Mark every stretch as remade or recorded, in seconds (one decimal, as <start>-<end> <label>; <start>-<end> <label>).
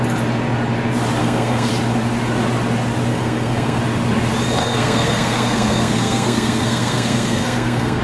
0.0-1.2 recorded; 1.2-1.7 remade; 1.7-3.1 recorded; 3.1-3.8 remade; 3.8-4.6 recorded; 4.6-8.0 remade